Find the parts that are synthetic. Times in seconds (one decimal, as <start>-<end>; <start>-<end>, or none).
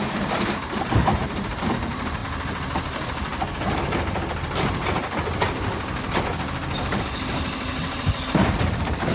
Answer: 0.0-2.2; 7.0-9.1